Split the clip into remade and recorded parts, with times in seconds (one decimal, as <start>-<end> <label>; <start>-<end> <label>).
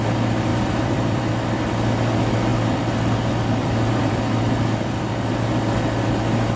0.0-0.5 recorded; 0.5-1.2 remade; 1.2-2.5 recorded; 2.5-5.3 remade; 5.3-6.6 recorded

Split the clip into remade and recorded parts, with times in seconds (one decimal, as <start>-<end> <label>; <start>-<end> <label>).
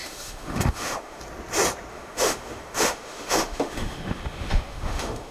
0.0-1.2 remade; 1.2-1.9 recorded; 1.9-5.3 remade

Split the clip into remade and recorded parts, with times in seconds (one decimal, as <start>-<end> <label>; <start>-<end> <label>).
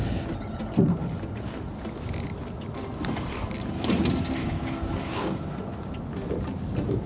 0.0-4.4 recorded; 4.4-5.6 remade; 5.6-7.1 recorded